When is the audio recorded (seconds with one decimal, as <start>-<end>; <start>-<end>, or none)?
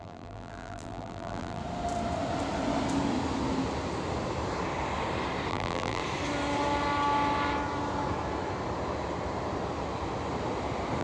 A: 1.6-5.5; 6.0-11.0